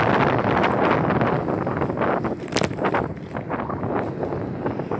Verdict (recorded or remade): recorded